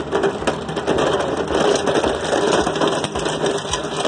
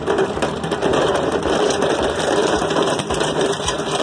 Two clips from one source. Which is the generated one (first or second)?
second